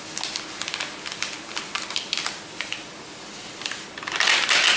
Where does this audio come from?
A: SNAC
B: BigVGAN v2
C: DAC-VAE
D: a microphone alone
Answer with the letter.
D